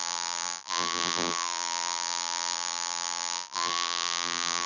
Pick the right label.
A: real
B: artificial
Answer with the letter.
B